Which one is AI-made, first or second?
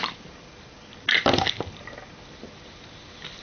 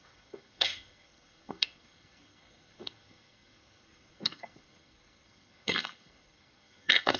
second